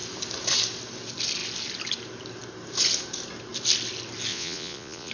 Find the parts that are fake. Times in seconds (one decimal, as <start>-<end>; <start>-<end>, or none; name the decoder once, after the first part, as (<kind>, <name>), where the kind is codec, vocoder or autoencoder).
4.3-5.1 (vocoder, Vocos)